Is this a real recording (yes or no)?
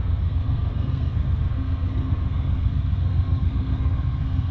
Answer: no